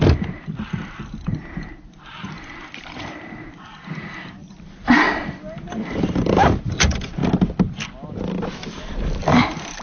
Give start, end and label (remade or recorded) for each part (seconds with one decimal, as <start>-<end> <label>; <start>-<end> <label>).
0.0-7.2 remade; 7.2-9.3 recorded; 9.3-9.8 remade